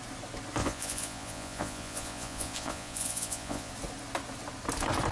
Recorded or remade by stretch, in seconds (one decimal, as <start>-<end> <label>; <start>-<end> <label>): 0.0-0.6 recorded; 0.6-3.7 remade; 3.7-5.1 recorded